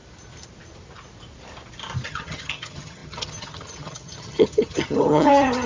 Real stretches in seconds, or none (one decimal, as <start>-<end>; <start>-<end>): 0.0-2.1